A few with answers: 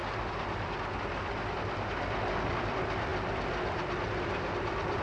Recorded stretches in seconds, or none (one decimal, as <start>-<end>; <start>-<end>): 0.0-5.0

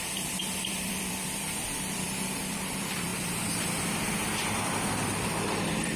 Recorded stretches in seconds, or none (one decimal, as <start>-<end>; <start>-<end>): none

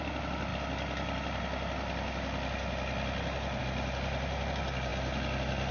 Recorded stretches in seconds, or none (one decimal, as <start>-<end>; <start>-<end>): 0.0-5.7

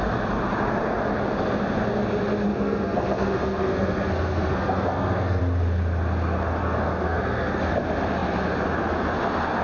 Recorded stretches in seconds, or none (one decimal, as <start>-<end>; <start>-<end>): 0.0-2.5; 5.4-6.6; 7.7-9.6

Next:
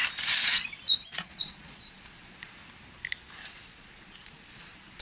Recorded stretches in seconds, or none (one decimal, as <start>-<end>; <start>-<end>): 0.0-1.1; 2.6-3.5

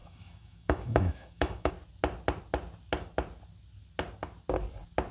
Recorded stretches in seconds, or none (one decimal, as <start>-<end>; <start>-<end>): 1.7-5.1

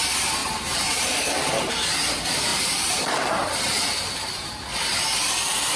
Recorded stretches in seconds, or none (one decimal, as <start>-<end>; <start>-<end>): 0.0-0.4; 1.7-2.5; 4.5-5.8

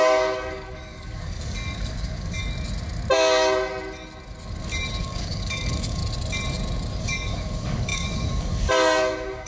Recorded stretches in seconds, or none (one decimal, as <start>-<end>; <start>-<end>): 2.4-5.0; 6.0-7.0